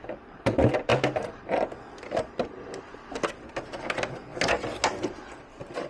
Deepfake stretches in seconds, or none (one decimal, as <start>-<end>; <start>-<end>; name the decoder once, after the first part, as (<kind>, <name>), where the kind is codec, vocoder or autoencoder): none